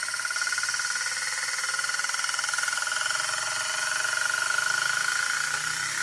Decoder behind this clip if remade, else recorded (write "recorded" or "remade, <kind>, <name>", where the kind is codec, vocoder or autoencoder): recorded